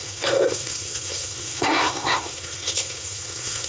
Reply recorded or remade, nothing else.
remade